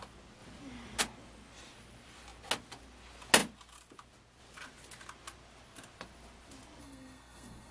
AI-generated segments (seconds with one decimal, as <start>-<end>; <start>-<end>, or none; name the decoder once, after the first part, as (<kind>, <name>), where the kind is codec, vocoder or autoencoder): 6.8-7.7 (codec, SNAC)